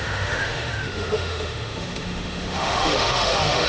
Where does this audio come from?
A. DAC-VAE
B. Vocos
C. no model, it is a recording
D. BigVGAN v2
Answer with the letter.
A